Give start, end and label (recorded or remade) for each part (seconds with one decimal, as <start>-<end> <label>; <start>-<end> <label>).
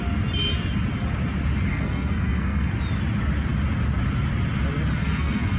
0.0-1.7 recorded; 1.7-2.7 remade; 2.7-5.0 recorded; 5.0-5.6 remade